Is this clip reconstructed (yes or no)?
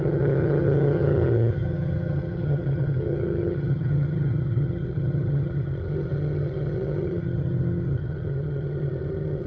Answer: yes